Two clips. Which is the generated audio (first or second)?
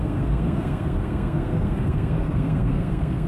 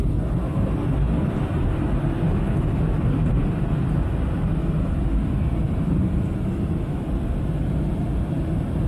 first